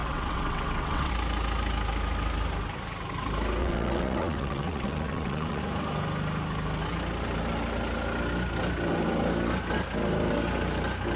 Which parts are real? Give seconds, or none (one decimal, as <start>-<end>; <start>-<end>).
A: 1.1-3.6; 5.6-11.2